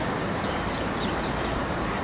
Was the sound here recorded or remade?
remade